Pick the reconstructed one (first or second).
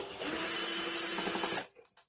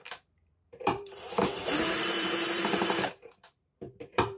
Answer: second